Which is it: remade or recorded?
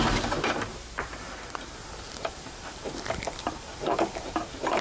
remade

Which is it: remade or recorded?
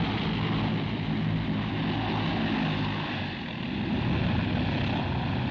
recorded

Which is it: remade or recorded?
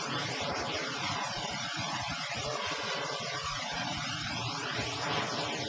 remade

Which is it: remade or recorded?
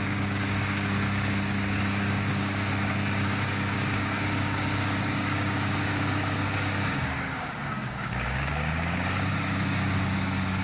remade